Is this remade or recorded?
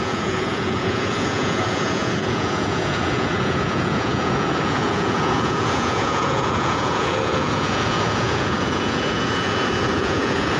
remade